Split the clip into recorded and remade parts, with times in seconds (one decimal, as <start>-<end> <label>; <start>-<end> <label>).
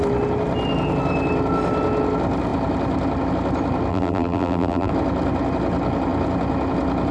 0.0-3.9 recorded; 3.9-4.9 remade; 4.9-7.1 recorded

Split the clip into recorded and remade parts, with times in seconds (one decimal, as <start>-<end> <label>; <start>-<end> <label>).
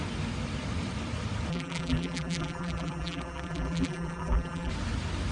0.0-1.5 recorded; 1.5-4.7 remade; 4.7-5.3 recorded